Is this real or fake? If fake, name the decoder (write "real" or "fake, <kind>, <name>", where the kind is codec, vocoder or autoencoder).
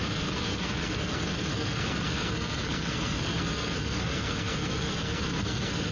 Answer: fake, codec, SNAC